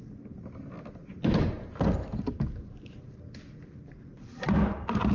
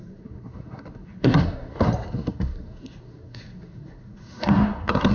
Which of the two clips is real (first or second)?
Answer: first